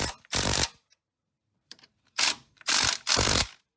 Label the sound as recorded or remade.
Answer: remade